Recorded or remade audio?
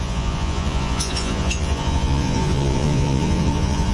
remade